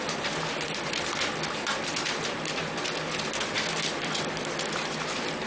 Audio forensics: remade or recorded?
remade